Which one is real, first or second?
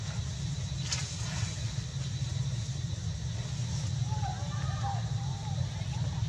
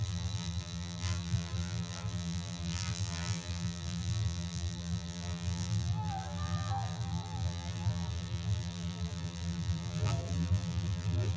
first